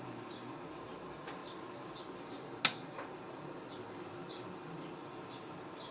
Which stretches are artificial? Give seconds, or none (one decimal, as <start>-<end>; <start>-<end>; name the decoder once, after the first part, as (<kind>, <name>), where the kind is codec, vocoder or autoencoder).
none